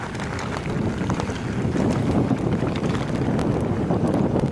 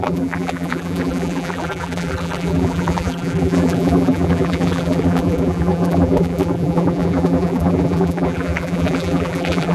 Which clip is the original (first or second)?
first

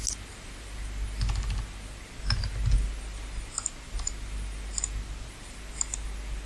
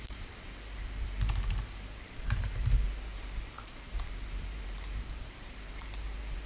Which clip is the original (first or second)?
first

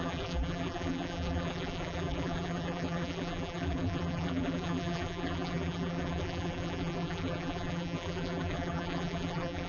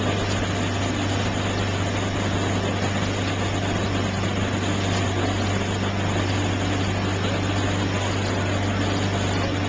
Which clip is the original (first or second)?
second